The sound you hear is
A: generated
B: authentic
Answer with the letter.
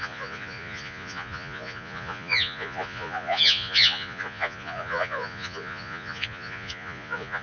A